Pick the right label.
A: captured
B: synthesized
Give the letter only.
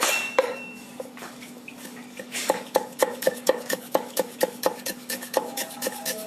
B